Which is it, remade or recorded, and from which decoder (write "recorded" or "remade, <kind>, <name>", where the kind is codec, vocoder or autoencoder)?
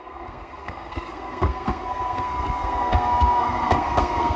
remade, codec, SNAC